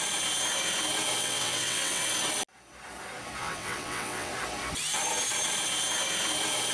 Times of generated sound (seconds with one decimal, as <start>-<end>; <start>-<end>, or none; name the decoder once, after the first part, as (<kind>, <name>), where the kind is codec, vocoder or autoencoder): 1.2-2.0 (vocoder, WaveNeXt); 3.4-4.3